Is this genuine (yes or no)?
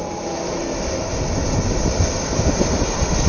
yes